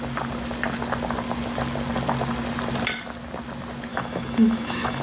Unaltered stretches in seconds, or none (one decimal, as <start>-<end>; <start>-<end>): 0.0-3.9

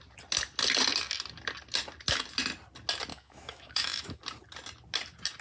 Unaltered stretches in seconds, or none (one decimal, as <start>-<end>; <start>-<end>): 0.0-3.1; 4.2-5.4

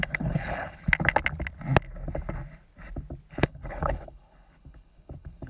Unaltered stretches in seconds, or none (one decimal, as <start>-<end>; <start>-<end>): 0.8-3.3

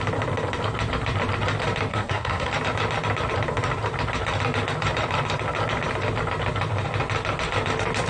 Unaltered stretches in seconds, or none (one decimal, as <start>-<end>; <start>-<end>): 0.0-1.9; 2.5-8.1

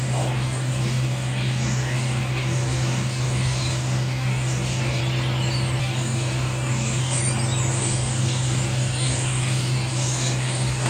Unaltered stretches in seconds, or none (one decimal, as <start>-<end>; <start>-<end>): 5.0-5.8; 7.2-7.7

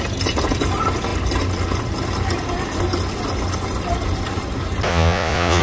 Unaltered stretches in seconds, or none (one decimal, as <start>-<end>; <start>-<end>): 0.0-4.9

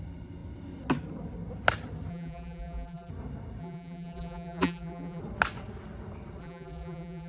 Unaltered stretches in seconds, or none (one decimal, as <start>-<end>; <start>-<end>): 0.0-2.1; 3.1-3.6; 5.2-6.4

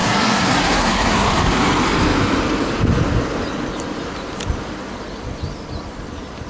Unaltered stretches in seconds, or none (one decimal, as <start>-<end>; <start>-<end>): 1.3-6.5